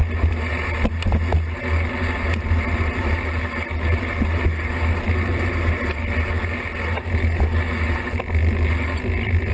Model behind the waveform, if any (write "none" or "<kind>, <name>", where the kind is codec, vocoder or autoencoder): none